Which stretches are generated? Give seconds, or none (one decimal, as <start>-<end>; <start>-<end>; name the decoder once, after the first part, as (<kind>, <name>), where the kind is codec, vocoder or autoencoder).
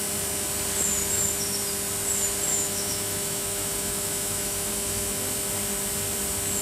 2.5-5.2 (autoencoder, DAC-VAE)